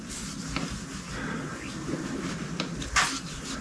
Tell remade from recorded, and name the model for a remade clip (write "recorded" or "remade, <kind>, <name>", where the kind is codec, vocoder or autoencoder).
recorded